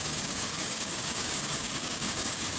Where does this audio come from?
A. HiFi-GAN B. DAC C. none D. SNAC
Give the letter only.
B